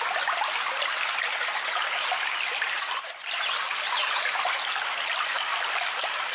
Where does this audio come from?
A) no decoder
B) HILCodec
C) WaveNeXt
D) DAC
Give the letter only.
A